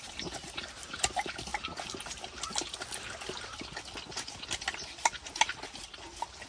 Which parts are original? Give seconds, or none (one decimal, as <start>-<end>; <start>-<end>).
0.0-6.5